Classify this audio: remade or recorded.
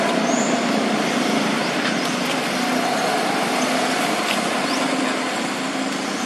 recorded